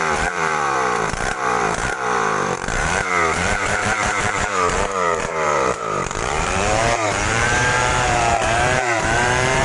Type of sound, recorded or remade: remade